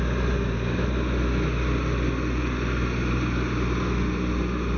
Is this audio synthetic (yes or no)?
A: no